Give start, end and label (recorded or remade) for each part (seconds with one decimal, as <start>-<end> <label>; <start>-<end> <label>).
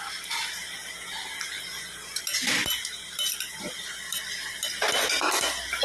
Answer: 0.0-1.7 recorded; 1.7-2.2 remade; 2.2-5.8 recorded